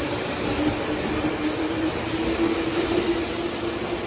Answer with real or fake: fake